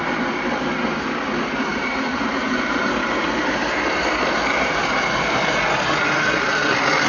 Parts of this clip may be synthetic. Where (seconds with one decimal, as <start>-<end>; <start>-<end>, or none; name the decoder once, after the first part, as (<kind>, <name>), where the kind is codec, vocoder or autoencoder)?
1.7-5.4 (vocoder, BigVGAN v2)